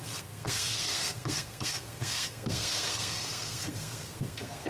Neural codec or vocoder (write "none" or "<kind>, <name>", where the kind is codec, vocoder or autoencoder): codec, SNAC